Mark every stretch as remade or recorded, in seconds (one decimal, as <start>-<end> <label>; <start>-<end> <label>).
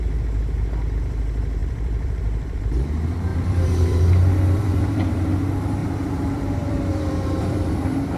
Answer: 0.0-1.6 recorded; 1.6-2.6 remade; 2.6-3.3 recorded; 3.3-5.2 remade; 5.2-5.8 recorded; 5.8-7.4 remade; 7.4-8.2 recorded